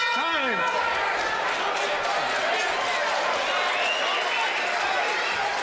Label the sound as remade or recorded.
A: recorded